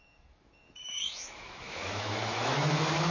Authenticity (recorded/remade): remade